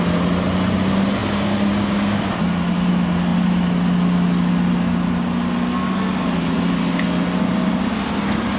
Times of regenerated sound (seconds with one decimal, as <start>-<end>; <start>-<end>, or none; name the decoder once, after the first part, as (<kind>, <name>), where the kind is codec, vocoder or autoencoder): none